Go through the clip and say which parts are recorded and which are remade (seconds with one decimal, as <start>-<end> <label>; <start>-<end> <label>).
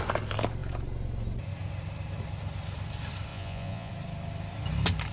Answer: 0.0-3.3 recorded; 3.3-3.9 remade; 3.9-5.1 recorded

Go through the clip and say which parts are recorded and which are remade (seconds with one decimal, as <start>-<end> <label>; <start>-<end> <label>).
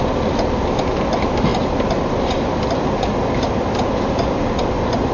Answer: 0.0-5.1 recorded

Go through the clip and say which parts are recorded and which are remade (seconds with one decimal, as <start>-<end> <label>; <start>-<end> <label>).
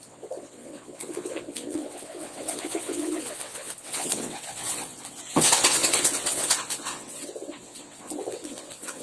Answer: 0.0-9.0 remade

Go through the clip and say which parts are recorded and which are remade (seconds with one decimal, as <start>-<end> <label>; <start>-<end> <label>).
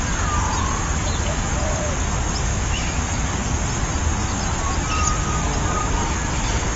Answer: 0.0-2.5 recorded; 2.5-3.0 remade; 3.0-6.8 recorded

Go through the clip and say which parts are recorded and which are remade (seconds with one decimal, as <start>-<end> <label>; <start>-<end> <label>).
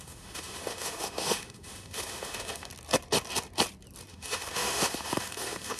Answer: 0.0-2.7 remade; 2.7-4.1 recorded; 4.1-5.8 remade